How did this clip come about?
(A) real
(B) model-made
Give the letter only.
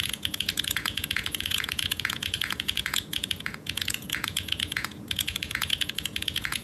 B